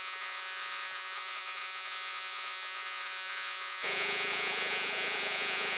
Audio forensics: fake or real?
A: fake